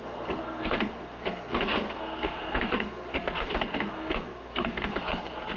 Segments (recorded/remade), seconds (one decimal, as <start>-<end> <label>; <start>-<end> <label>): 0.0-5.6 remade